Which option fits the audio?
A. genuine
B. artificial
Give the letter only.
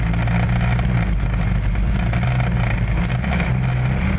A